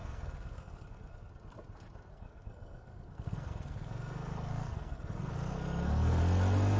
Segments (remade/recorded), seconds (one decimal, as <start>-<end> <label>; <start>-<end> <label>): 0.0-1.3 remade; 1.3-2.1 recorded; 2.1-6.2 remade; 6.2-6.8 recorded

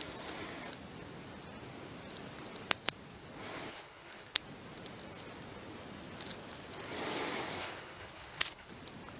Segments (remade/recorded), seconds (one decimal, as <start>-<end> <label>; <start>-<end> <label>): 0.0-3.7 recorded; 3.7-4.4 remade; 4.4-7.6 recorded; 7.6-8.7 remade; 8.7-9.2 recorded

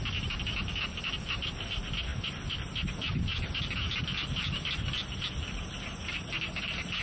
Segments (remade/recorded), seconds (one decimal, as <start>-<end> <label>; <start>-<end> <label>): 0.0-7.0 recorded

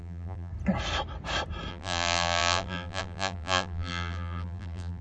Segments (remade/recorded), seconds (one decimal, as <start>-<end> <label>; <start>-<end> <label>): 0.0-0.5 remade; 0.5-1.7 recorded; 1.7-5.0 remade